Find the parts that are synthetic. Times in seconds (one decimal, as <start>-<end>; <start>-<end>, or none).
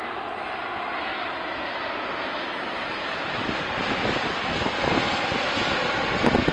1.1-4.6